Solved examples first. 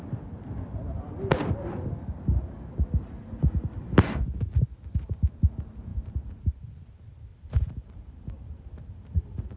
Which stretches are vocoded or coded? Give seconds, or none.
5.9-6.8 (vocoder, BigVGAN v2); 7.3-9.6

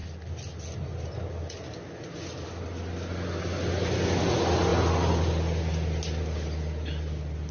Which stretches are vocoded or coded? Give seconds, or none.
none

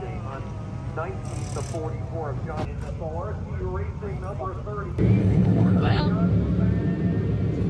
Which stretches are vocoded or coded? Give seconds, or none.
5.2-6.0 (codec, HILCodec)

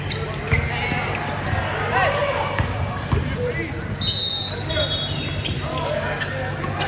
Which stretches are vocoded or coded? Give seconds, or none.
4.2-4.7 (codec, DAC); 5.7-6.3

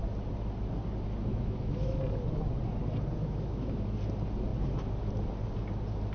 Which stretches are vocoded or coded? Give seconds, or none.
1.3-2.0 (autoencoder, DAC-VAE); 3.2-3.8

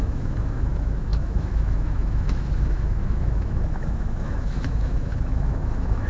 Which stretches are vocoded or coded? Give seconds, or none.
0.0-6.1 (autoencoder, DAC-VAE)